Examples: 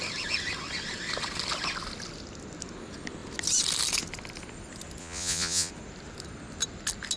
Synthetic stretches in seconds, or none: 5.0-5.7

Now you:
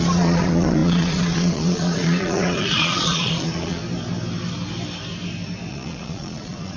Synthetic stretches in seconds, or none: 0.0-3.8; 5.7-6.8

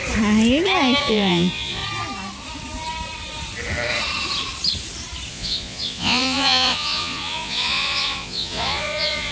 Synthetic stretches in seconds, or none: 1.0-1.8; 5.3-9.3